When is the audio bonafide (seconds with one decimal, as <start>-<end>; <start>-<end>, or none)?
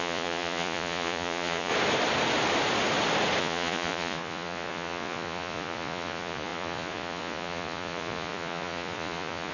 1.7-3.4